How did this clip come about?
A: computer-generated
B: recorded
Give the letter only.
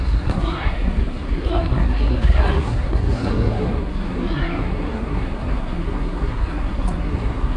A